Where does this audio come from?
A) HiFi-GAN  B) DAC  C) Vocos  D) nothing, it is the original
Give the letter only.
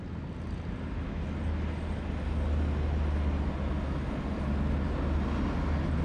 D